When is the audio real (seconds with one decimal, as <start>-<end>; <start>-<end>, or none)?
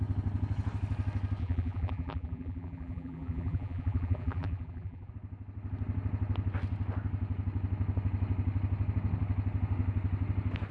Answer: 0.0-1.4; 5.1-10.7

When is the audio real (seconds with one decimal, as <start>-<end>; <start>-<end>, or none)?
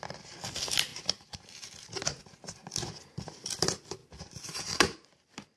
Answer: 0.0-0.9; 2.2-4.0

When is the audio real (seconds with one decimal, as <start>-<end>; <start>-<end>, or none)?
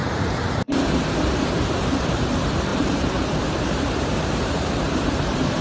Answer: 2.0-2.7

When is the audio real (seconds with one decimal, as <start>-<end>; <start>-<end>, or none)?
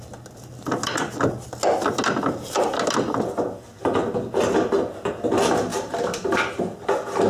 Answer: 0.0-5.7; 6.4-7.3